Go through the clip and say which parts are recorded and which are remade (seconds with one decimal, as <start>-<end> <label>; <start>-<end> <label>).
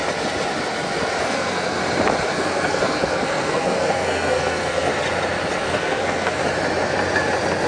0.0-1.2 recorded; 1.2-1.8 remade; 1.8-2.3 recorded; 2.3-4.9 remade; 4.9-5.6 recorded; 5.6-6.4 remade; 6.4-7.7 recorded